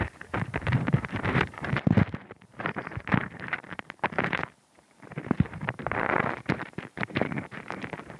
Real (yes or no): no